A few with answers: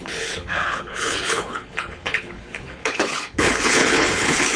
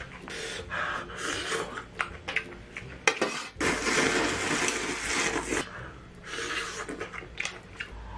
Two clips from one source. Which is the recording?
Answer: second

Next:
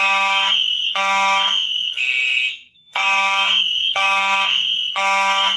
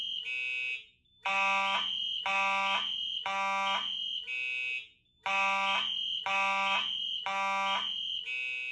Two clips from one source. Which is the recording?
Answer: second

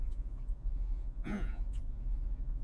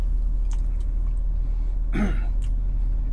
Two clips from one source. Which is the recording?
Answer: second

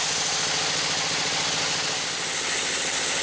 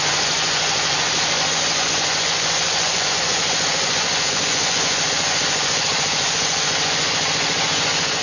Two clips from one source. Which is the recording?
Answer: first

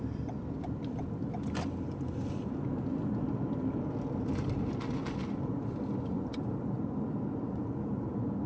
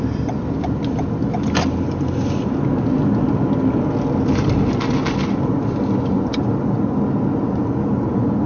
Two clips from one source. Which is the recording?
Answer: second